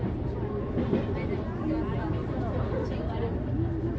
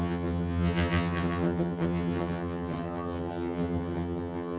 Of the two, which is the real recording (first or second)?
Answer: first